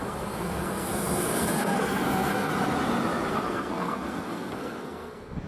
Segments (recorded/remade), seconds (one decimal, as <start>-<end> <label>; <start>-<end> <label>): 0.0-2.5 remade; 2.5-3.3 recorded; 3.3-5.5 remade